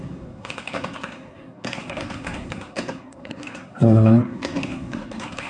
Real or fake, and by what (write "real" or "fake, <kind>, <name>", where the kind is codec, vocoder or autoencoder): fake, codec, SNAC